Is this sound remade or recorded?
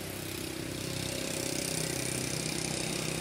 recorded